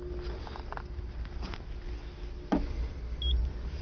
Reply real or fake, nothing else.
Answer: real